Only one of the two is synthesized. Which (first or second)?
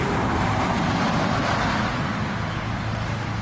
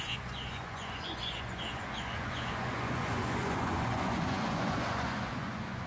second